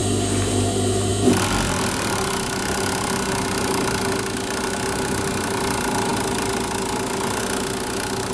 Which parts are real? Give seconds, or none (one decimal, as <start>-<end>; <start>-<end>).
0.0-8.3